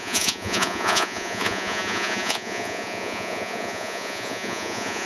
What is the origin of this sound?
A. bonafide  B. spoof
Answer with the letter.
B